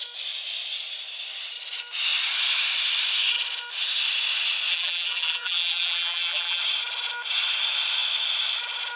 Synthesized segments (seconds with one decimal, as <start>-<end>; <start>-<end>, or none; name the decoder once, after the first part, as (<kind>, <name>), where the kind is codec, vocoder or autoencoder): 4.7-6.6 (vocoder, BigVGAN v2)